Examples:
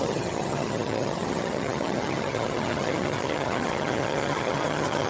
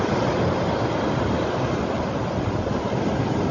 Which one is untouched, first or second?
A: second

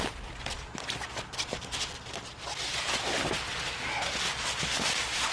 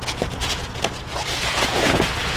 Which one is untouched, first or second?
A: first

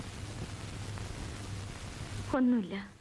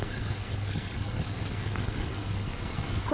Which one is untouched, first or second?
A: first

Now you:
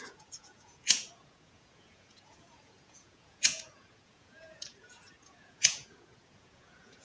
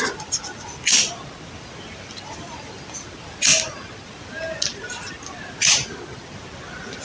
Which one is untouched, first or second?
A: second